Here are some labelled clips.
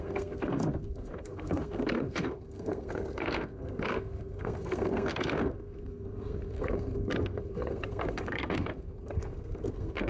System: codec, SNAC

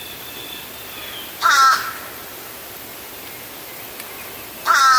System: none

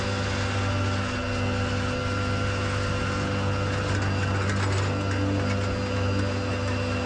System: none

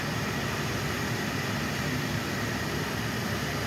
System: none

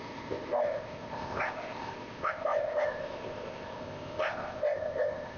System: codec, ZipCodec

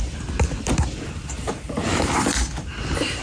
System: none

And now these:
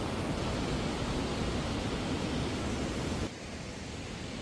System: none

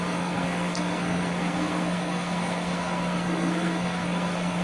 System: codec, SNAC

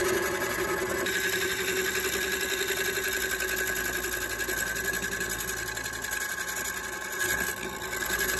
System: none